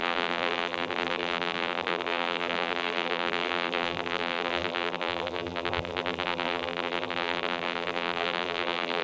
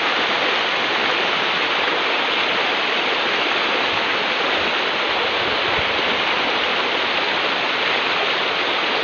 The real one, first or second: second